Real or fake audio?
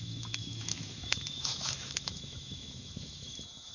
fake